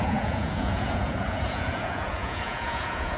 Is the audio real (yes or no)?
no